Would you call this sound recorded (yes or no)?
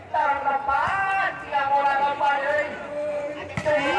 yes